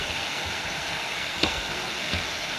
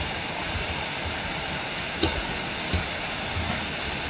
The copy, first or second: first